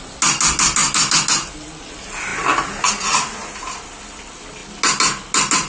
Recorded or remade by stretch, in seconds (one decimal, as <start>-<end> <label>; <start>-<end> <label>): 0.0-5.7 recorded